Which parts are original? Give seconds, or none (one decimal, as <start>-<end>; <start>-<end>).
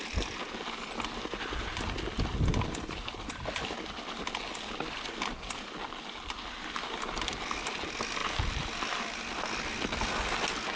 0.0-10.8